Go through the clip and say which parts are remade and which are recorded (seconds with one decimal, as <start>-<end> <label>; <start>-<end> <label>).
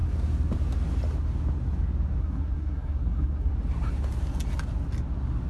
0.0-2.2 recorded; 2.2-3.5 remade; 3.5-5.5 recorded